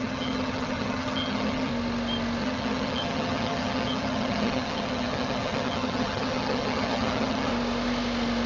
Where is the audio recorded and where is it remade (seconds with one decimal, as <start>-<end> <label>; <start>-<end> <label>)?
0.0-1.7 remade; 1.7-2.4 recorded; 2.4-7.5 remade; 7.5-8.5 recorded